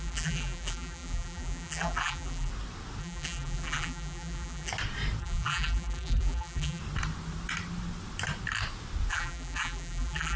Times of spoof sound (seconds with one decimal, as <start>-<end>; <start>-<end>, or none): 0.0-2.5; 3.0-4.7; 5.2-6.8; 9.1-10.4